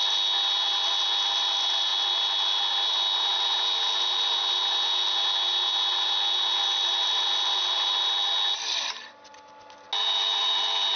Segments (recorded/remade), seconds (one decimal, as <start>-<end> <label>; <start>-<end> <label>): 0.0-11.0 recorded